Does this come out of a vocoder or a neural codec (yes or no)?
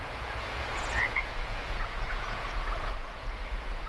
yes